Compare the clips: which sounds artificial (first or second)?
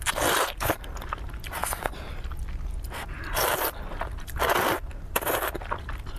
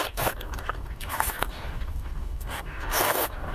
second